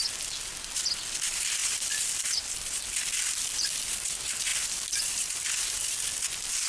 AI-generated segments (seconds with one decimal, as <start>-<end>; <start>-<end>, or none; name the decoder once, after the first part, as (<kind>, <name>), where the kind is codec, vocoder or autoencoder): 1.6-2.8 (vocoder, BigVGAN v2); 4.5-5.3